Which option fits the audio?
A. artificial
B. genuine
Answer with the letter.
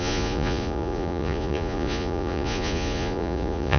A